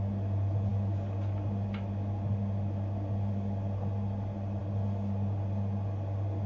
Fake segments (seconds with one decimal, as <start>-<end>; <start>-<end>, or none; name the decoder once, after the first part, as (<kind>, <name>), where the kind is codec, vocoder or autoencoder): none

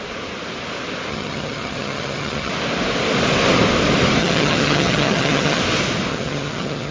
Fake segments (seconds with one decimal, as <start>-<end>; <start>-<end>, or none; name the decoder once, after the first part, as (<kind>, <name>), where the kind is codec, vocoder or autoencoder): 1.1-2.5 (vocoder, HiFi-GAN); 4.2-5.6; 6.1-6.9

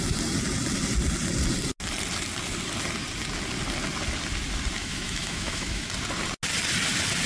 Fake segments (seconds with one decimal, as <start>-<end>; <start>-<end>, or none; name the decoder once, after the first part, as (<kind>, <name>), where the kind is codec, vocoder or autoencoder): 4.8-5.9 (autoencoder, DAC-VAE)

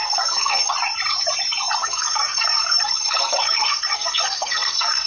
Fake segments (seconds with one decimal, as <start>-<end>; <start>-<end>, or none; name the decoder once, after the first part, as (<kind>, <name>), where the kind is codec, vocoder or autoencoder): 0.0-0.7 (codec, SNAC); 1.8-5.1

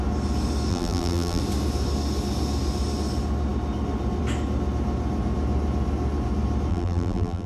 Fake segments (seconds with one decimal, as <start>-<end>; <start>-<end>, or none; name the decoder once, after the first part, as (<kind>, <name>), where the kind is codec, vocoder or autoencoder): 0.7-1.4 (vocoder, BigVGAN v2); 6.7-7.5

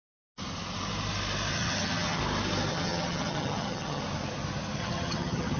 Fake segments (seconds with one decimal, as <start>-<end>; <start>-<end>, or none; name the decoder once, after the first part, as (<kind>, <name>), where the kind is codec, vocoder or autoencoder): 1.5-2.2 (vocoder, HiFi-GAN); 2.7-4.0; 4.8-5.6

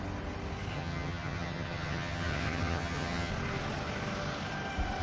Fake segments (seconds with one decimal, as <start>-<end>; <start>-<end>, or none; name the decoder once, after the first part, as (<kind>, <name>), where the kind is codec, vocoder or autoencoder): 0.7-3.3 (vocoder, HiFi-GAN)